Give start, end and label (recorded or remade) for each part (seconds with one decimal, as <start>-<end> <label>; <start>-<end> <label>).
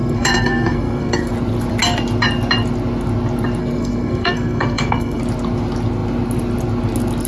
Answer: 0.0-1.3 remade; 1.3-3.6 recorded; 3.6-5.2 remade; 5.2-7.3 recorded